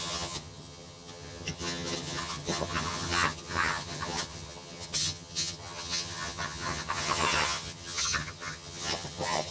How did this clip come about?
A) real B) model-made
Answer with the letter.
B